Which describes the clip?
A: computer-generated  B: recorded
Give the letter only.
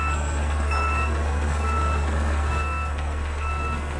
A